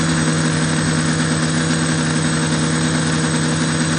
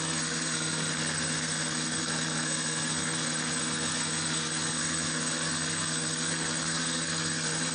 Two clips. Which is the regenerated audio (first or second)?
second